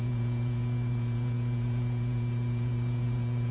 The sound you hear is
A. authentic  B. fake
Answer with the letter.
B